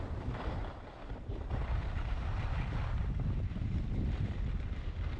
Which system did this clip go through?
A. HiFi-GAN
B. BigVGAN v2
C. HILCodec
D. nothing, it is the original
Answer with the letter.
B